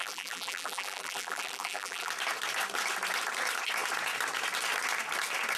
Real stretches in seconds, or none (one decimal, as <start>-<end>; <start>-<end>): 2.1-5.6